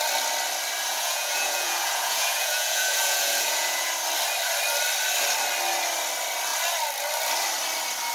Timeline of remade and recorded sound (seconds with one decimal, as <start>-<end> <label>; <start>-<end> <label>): 0.0-0.9 recorded; 0.9-3.9 remade; 3.9-8.1 recorded